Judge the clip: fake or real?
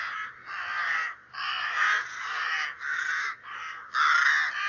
real